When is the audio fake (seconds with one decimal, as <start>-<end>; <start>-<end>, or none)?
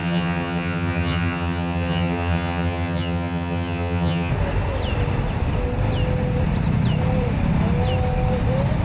0.0-4.3